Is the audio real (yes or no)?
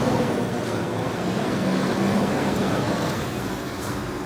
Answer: no